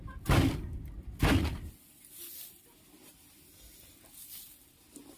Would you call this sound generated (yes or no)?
no